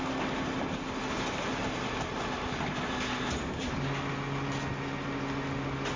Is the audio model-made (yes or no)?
no